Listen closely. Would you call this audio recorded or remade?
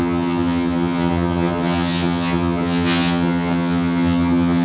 remade